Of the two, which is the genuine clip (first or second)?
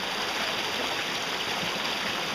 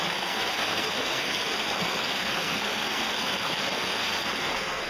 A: first